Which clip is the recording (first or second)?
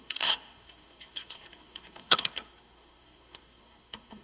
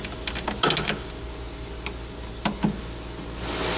second